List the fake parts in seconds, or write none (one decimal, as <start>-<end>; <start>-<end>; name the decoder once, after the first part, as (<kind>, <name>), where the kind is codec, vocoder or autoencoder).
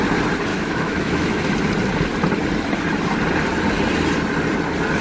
0.5-1.4 (autoencoder, DAC-VAE)